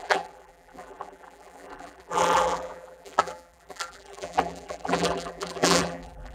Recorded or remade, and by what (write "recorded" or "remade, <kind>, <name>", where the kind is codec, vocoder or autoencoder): remade, vocoder, BigVGAN v2